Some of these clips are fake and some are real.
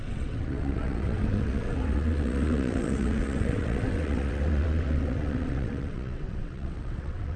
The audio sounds fake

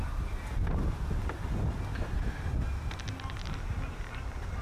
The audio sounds real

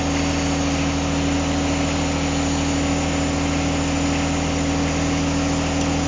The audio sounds real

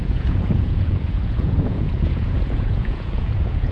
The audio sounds fake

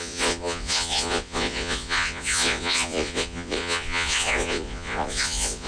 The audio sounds fake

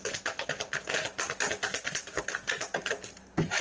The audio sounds real